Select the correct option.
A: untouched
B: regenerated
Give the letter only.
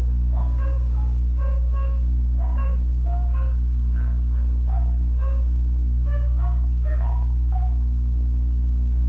B